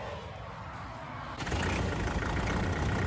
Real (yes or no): yes